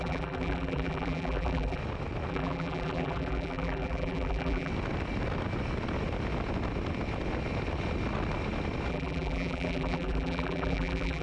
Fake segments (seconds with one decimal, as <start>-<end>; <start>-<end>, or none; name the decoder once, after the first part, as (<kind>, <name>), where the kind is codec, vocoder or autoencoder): 0.0-1.8 (vocoder, BigVGAN v2); 2.3-4.7; 8.9-11.2